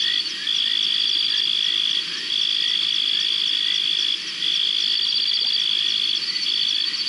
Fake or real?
real